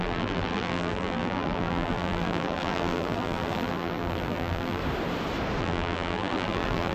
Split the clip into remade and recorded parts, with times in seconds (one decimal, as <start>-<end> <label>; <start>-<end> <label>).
0.0-4.8 remade; 4.8-5.6 recorded; 5.6-6.9 remade

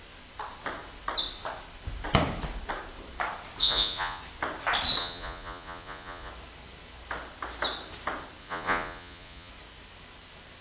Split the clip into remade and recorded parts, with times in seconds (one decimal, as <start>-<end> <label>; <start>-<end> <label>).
0.0-3.6 recorded; 3.6-4.2 remade; 4.2-5.0 recorded; 5.0-6.3 remade; 6.3-8.4 recorded; 8.4-9.5 remade; 9.5-10.6 recorded

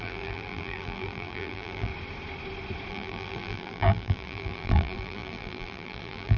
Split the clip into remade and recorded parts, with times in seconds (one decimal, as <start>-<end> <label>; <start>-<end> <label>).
0.0-1.9 remade; 1.9-2.9 recorded; 2.9-6.4 remade

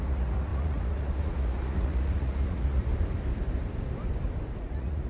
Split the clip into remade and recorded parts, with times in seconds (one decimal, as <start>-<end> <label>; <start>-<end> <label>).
0.0-2.9 remade; 2.9-4.6 recorded; 4.6-5.1 remade

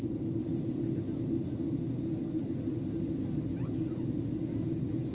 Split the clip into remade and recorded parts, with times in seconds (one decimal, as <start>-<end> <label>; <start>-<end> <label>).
0.0-5.1 recorded

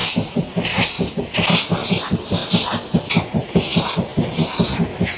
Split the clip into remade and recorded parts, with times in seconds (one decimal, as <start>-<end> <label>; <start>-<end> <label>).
0.0-1.2 remade; 1.2-5.2 recorded

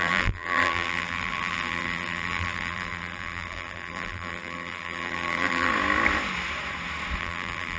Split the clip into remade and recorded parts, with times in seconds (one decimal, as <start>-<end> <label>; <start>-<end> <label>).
0.0-5.7 remade; 5.7-7.2 recorded; 7.2-7.8 remade